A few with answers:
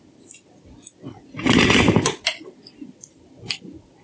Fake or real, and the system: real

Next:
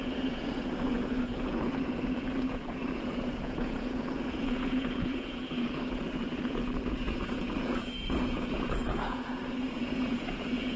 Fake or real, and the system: fake, vocoder, Vocos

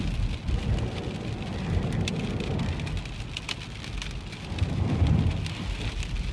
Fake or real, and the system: real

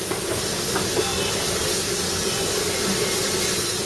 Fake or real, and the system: real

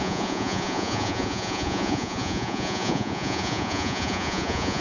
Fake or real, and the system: fake, vocoder, Vocos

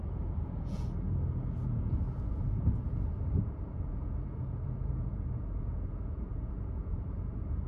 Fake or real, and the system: fake, vocoder, Vocos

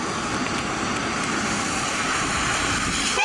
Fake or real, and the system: real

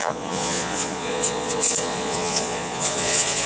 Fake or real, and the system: fake, vocoder, Vocos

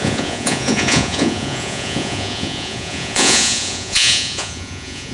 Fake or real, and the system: fake, vocoder, Vocos